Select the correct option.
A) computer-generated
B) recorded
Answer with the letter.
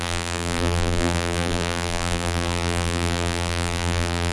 A